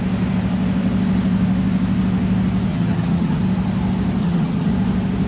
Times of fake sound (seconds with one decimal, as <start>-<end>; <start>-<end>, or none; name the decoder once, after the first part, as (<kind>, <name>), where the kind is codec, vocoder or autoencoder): 2.7-3.4 (vocoder, HiFi-GAN); 4.2-4.7